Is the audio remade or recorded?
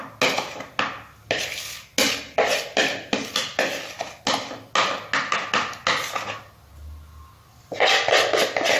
recorded